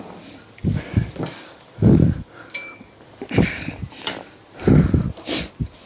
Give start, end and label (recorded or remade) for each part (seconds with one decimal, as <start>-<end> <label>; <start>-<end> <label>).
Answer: 0.0-0.6 recorded; 0.6-2.9 remade; 2.9-5.9 recorded